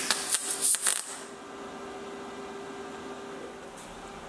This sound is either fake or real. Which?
real